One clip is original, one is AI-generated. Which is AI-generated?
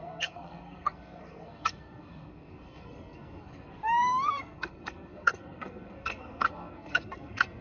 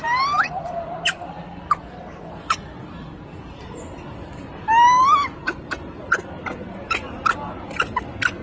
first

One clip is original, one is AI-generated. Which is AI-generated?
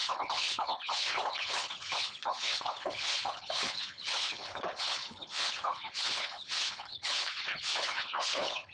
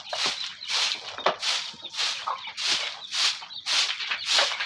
first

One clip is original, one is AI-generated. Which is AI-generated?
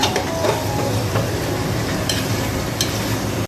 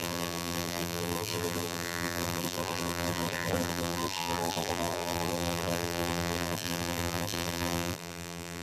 second